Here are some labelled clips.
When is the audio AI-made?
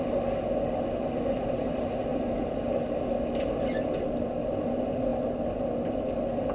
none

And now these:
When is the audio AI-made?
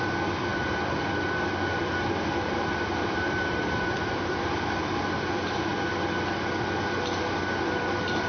0.0-5.7 (vocoder, BigVGAN v2); 7.6-8.3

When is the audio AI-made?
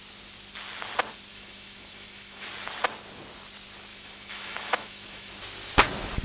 1.3-2.5 (autoencoder, DAC-VAE); 3.9-5.3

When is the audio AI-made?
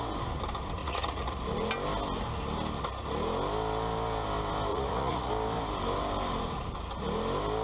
0.8-1.4 (vocoder, Vocos); 4.7-5.3